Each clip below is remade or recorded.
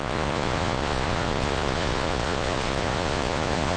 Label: remade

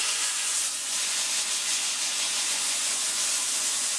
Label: remade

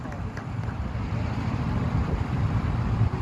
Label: recorded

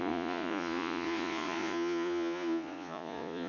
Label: remade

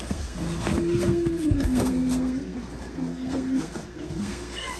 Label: remade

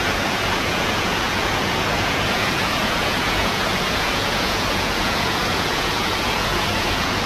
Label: remade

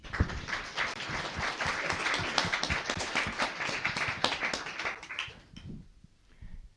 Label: remade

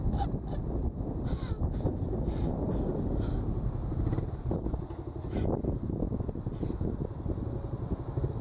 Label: recorded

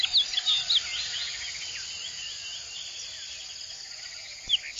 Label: recorded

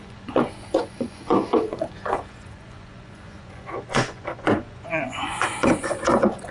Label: remade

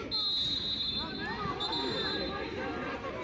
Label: recorded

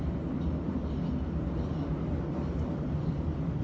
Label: recorded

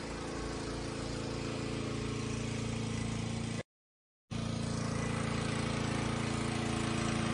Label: recorded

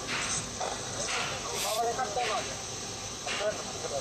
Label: remade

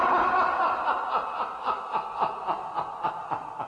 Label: recorded